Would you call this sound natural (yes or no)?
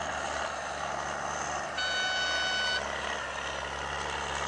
yes